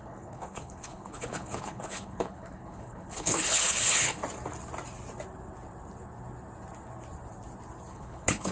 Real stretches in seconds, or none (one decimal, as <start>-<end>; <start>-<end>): 4.2-7.9